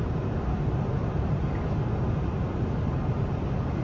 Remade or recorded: recorded